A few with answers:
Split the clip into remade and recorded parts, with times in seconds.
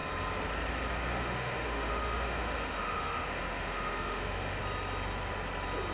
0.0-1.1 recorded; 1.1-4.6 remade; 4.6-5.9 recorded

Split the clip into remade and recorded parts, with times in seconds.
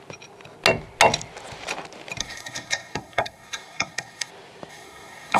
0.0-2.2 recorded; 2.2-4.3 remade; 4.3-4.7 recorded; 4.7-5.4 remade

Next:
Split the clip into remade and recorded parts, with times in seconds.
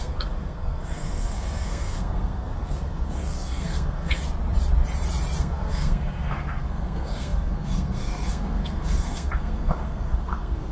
0.0-4.2 remade; 4.2-5.4 recorded; 5.4-10.7 remade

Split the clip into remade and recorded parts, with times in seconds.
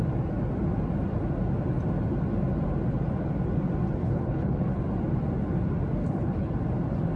0.0-4.0 recorded; 4.0-4.8 remade; 4.8-6.0 recorded; 6.0-6.5 remade; 6.5-7.2 recorded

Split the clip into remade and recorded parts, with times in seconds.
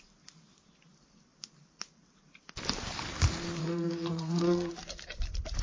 0.0-3.6 recorded; 3.6-4.7 remade; 4.7-5.6 recorded